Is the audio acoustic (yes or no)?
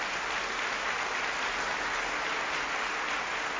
yes